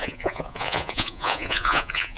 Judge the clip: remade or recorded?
remade